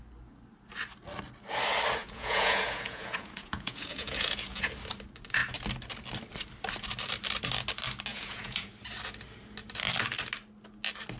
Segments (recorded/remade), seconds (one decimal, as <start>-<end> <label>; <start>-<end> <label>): 0.0-2.0 recorded; 2.0-4.7 remade; 4.7-8.1 recorded; 8.1-8.7 remade; 8.7-11.2 recorded